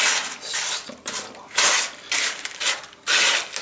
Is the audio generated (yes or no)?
no